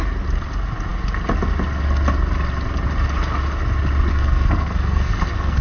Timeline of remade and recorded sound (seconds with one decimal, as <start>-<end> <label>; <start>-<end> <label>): 0.0-4.1 recorded; 4.1-5.6 remade